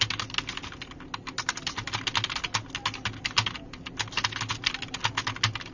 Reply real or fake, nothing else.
real